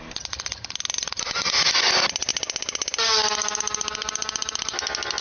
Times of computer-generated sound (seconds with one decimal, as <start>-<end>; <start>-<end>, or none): none